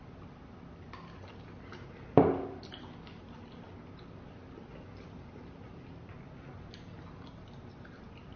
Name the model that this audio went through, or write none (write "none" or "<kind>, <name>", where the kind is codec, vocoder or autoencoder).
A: none